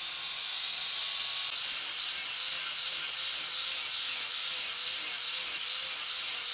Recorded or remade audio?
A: recorded